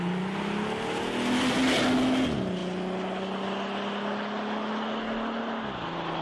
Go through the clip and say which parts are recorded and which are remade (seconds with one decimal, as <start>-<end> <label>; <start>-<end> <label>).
0.0-6.2 recorded